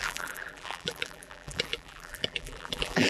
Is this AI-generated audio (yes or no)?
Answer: yes